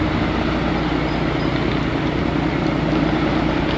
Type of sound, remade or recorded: recorded